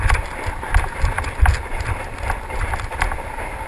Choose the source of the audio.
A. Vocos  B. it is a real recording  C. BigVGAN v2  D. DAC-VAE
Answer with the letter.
B